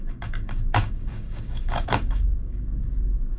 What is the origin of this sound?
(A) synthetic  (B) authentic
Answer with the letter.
A